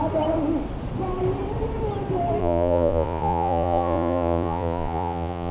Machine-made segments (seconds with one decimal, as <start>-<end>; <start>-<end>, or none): 2.4-5.5